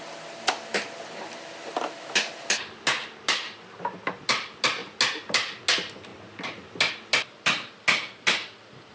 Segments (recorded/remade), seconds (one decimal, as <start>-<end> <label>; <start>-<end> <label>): 0.0-8.9 recorded